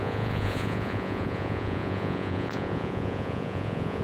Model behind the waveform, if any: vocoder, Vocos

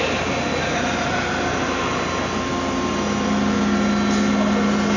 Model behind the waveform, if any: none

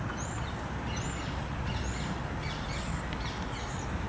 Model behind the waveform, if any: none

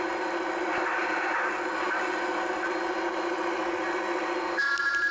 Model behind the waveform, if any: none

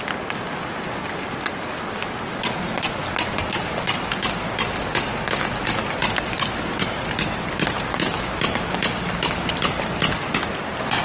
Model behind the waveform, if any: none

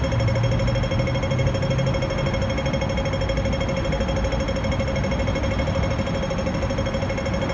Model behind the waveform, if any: none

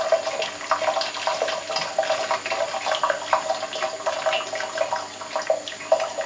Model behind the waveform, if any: none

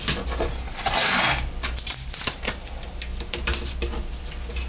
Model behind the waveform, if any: none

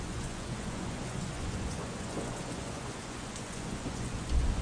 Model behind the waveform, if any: vocoder, Vocos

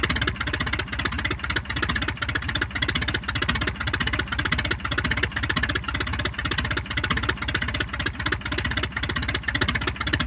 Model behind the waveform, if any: none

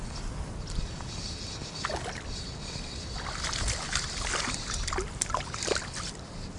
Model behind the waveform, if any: none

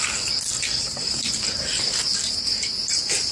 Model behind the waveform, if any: none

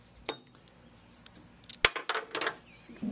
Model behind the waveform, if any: none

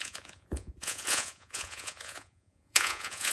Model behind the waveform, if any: vocoder, Vocos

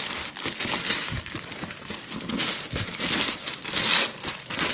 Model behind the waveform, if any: none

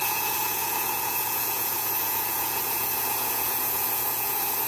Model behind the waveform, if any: vocoder, Vocos